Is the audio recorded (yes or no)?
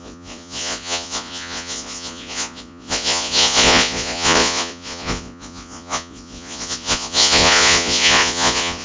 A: no